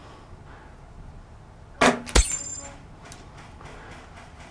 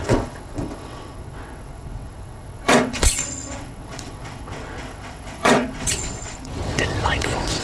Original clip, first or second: first